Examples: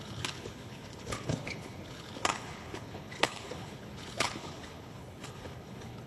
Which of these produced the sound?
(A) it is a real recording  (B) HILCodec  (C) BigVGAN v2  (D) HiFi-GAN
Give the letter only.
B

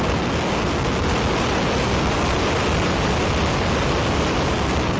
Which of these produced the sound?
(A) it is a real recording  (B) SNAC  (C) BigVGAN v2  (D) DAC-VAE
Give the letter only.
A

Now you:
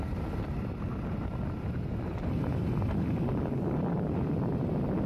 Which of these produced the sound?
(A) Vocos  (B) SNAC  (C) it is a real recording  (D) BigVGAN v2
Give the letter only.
C